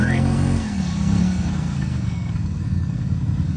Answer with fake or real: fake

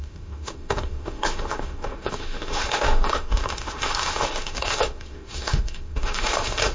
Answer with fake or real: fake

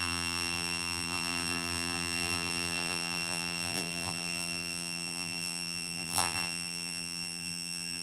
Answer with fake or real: fake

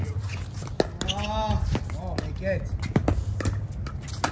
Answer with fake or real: real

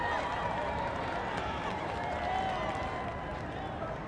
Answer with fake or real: fake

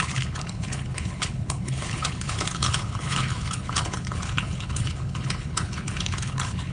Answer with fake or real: fake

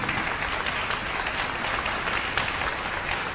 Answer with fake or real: real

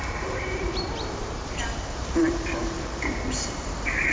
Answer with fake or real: fake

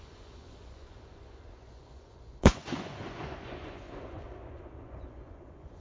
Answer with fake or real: fake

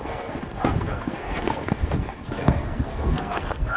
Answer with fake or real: fake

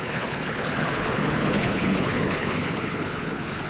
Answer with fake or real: fake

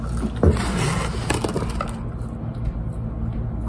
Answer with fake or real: real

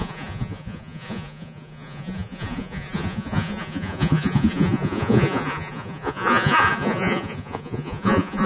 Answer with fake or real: fake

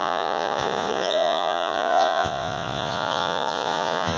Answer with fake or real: fake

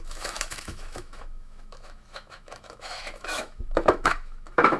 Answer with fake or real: fake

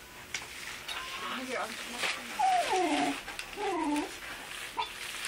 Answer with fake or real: real